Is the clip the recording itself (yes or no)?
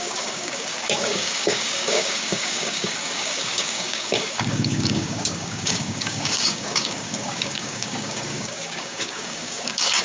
no